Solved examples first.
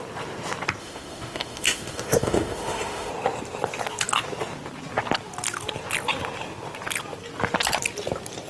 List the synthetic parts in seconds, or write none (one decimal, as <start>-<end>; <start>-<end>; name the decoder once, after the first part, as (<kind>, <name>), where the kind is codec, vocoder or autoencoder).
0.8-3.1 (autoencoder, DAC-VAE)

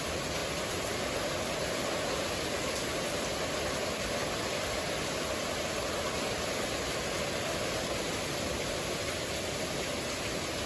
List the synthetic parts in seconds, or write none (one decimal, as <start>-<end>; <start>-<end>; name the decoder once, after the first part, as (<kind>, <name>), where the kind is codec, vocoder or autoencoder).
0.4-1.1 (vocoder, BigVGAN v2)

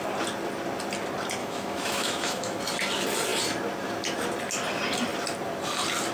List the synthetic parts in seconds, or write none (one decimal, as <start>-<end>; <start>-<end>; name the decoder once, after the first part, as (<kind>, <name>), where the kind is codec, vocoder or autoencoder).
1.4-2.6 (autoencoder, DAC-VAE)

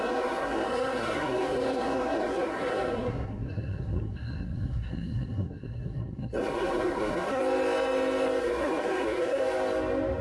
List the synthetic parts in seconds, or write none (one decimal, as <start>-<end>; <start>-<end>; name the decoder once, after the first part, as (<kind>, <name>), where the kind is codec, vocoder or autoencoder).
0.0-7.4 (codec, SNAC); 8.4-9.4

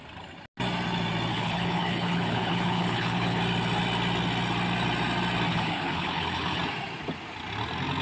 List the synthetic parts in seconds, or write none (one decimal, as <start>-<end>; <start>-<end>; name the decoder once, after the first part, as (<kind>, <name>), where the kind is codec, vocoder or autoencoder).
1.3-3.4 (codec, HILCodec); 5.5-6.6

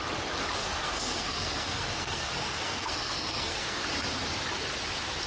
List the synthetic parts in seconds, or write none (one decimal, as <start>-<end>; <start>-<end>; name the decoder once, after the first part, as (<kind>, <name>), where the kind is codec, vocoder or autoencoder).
0.6-3.8 (codec, SNAC)